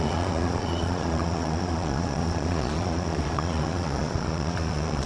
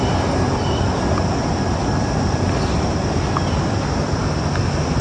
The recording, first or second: second